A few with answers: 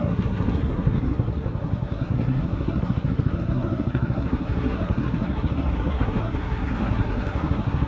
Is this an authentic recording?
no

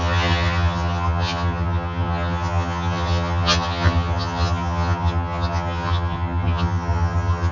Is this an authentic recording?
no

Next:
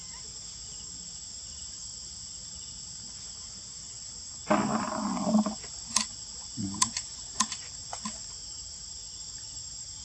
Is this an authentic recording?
yes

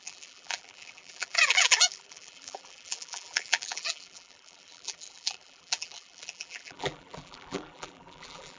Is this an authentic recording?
no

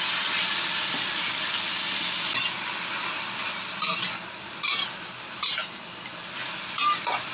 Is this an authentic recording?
yes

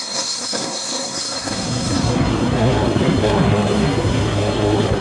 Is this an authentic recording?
no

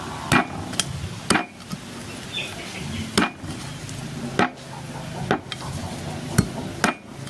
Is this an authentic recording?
yes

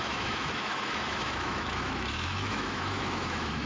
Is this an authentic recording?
no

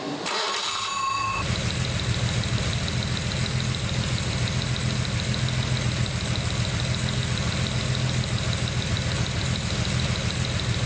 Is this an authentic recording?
yes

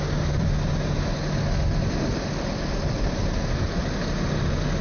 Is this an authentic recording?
yes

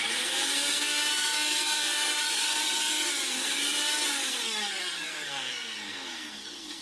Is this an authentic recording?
no